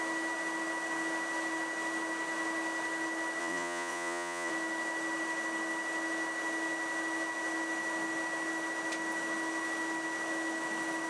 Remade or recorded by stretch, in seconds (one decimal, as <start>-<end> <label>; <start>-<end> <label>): 0.0-3.4 recorded; 3.4-4.5 remade; 4.5-11.1 recorded